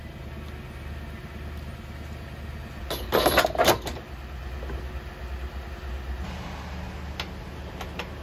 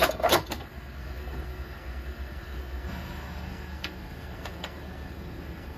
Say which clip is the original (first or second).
first